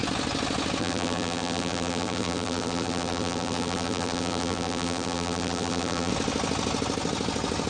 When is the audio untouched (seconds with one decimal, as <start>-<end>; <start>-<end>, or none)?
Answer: 0.0-0.8; 6.1-7.7